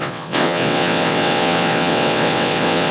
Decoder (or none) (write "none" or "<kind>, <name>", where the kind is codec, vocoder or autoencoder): vocoder, WaveNeXt